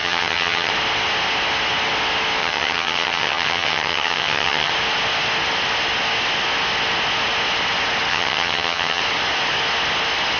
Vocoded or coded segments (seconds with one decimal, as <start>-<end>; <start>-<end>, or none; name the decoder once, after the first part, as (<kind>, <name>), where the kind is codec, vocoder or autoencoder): 0.0-0.7 (vocoder, HiFi-GAN); 2.4-4.7; 8.1-9.0